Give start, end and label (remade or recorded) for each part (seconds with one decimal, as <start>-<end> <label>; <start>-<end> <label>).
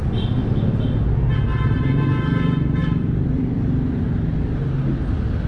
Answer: 0.0-2.8 recorded; 2.8-3.6 remade; 3.6-5.5 recorded